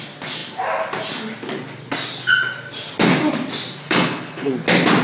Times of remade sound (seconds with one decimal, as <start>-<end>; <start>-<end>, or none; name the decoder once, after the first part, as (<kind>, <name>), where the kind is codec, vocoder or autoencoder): 3.8-4.5 (codec, HILCodec)